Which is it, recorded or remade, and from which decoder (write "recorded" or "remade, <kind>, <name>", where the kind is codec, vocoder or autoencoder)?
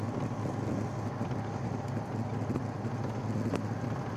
recorded